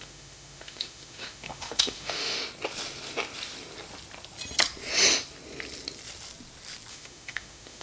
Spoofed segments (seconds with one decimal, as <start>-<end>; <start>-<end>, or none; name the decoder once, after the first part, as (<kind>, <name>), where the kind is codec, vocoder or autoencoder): 0.0-2.4 (autoencoder, DAC-VAE); 6.9-7.8